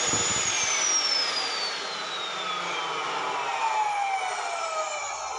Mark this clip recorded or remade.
recorded